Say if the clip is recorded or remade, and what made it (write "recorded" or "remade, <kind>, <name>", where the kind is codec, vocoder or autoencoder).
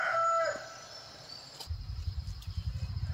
recorded